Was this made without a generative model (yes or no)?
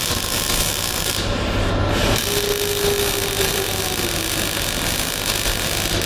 yes